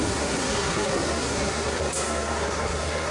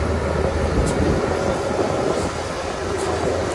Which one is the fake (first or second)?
first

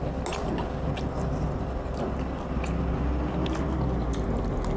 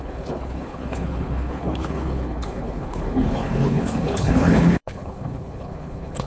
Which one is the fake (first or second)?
second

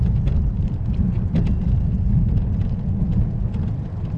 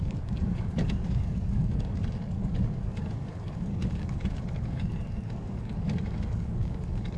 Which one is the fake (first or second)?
second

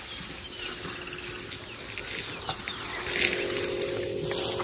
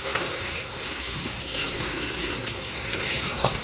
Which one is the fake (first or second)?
second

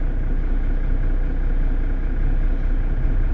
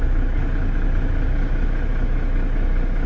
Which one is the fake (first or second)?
second